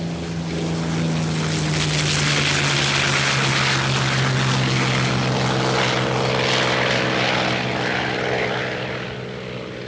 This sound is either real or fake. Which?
real